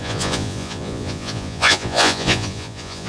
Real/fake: fake